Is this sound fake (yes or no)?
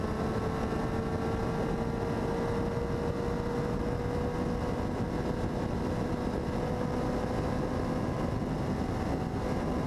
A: no